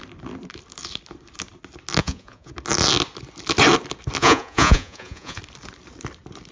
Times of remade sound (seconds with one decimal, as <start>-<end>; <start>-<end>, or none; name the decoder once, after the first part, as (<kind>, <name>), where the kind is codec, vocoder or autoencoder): 2.0-2.5 (vocoder, Vocos); 4.2-5.4